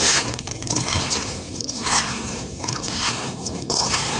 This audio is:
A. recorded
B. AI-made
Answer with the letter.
B